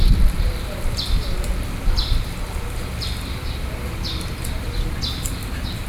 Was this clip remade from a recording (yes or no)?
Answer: no